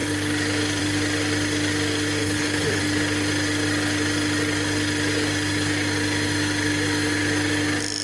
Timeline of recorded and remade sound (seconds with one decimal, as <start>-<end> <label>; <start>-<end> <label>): 0.0-2.2 recorded; 2.2-2.8 remade; 2.8-8.0 recorded

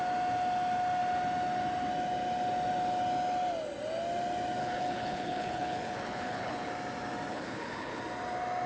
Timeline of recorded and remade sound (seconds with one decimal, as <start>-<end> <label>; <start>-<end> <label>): 0.0-4.6 recorded; 4.6-6.7 remade; 6.7-7.3 recorded; 7.3-8.0 remade; 8.0-8.7 recorded

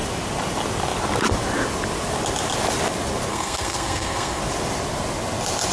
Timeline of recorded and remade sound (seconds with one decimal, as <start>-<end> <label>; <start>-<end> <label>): 0.0-3.3 recorded; 3.3-4.4 remade; 4.4-5.7 recorded

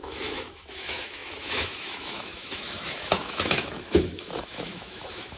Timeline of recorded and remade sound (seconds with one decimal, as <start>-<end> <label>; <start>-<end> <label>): 0.0-5.4 remade

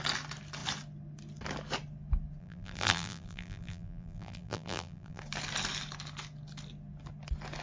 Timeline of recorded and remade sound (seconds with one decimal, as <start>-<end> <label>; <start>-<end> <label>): 0.0-2.4 recorded; 2.4-5.2 remade; 5.2-7.6 recorded

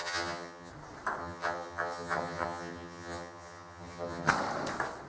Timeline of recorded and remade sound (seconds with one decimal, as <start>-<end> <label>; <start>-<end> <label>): 0.0-0.7 remade; 0.7-1.2 recorded; 1.2-4.3 remade; 4.3-5.1 recorded

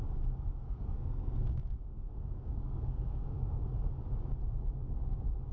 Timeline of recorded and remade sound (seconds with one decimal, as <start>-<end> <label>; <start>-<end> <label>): 0.0-0.6 recorded; 0.6-3.9 remade; 3.9-5.5 recorded